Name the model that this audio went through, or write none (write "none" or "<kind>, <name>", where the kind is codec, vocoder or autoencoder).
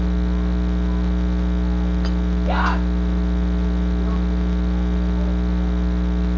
none